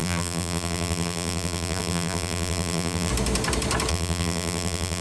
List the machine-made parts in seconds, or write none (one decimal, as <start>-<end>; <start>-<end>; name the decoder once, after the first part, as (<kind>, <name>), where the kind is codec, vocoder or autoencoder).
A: 0.0-3.1 (vocoder, BigVGAN v2); 3.9-5.0